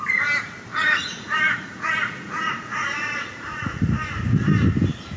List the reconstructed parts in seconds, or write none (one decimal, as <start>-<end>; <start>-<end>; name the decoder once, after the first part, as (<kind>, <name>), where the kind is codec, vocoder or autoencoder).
0.7-3.8 (vocoder, Vocos)